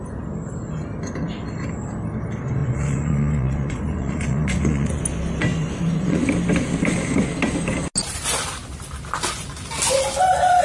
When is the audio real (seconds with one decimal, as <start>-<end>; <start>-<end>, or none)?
0.0-2.6; 5.0-5.5; 6.2-10.6